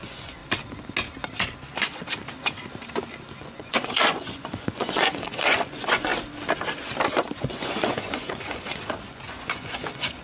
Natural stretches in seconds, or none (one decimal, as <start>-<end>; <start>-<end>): 0.4-3.4; 6.1-7.4